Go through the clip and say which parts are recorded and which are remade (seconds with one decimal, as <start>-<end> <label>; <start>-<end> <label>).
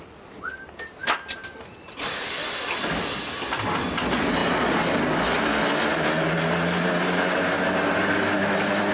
0.0-8.9 recorded